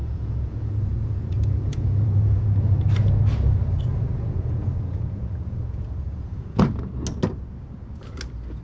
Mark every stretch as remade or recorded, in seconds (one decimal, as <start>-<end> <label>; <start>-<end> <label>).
0.0-2.4 remade; 2.4-3.9 recorded; 3.9-6.6 remade; 6.6-8.6 recorded